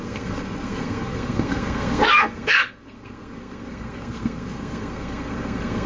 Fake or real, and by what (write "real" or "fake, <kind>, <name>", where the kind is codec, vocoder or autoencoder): fake, codec, SNAC